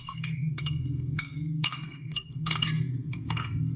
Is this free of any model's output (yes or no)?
no